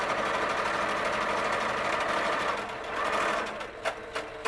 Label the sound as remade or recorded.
recorded